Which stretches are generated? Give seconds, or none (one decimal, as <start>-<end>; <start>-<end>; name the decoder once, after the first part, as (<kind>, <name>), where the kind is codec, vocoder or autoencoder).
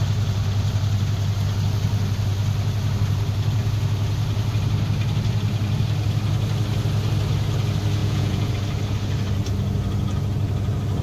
8.0-8.5 (vocoder, Vocos)